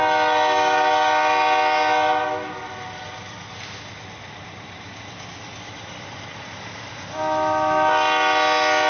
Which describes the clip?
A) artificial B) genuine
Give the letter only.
B